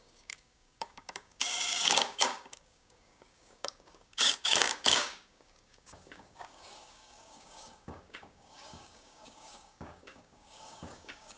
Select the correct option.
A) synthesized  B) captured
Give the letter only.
A